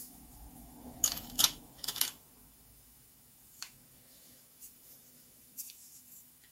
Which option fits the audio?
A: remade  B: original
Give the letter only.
A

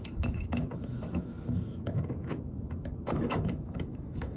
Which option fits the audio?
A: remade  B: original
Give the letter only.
A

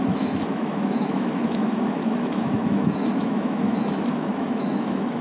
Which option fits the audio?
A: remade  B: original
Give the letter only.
A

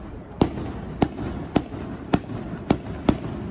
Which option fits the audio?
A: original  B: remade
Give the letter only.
A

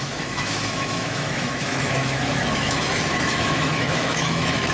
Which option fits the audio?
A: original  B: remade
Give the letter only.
B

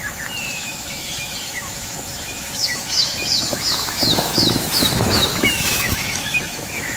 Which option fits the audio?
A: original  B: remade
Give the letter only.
B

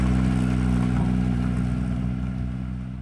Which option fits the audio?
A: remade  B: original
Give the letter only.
B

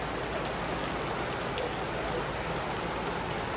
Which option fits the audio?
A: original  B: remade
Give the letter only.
A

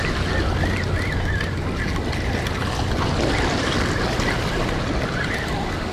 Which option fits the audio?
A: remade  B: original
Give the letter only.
B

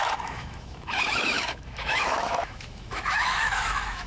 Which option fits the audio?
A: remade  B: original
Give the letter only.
A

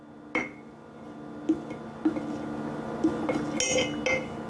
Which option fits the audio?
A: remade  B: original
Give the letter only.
B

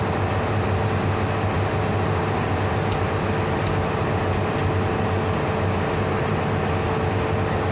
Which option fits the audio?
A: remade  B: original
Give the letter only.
B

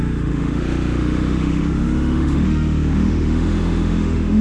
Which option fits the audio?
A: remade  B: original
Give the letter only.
A